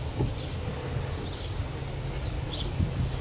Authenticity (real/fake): real